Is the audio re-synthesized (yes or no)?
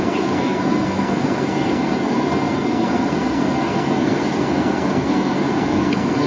yes